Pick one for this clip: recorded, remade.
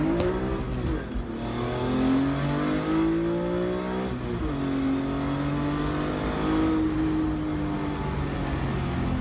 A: recorded